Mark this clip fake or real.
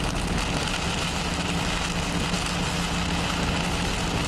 real